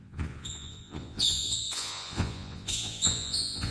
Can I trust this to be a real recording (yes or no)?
no